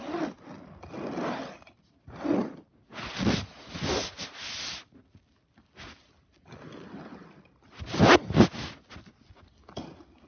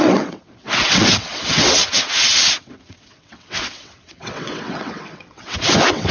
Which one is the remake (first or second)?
second